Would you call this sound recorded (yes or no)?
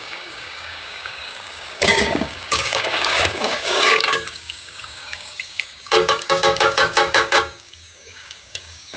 no